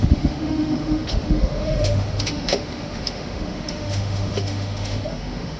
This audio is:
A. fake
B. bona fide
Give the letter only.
A